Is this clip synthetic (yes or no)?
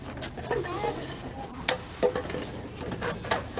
no